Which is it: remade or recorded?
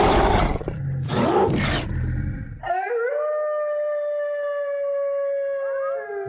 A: recorded